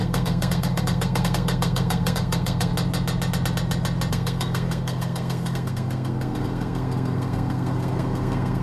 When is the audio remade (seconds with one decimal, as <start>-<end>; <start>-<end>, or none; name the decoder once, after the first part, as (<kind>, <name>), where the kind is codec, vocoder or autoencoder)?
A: 0.0-2.7 (codec, SNAC); 4.1-8.6